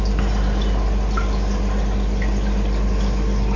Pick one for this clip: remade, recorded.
recorded